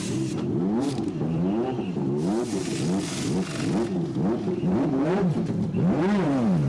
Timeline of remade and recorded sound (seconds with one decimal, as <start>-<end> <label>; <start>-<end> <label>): 0.0-2.7 remade; 2.7-4.9 recorded; 4.9-6.7 remade